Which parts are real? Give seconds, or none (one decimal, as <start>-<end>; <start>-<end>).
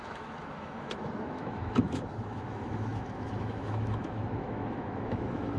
none